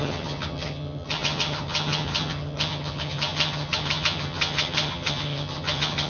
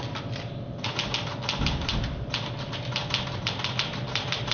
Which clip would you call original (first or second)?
second